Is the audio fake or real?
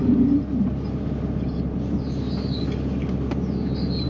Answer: real